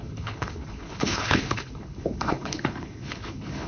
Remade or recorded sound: remade